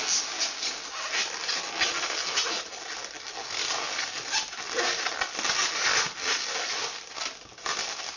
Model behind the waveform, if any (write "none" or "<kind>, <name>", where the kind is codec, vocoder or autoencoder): none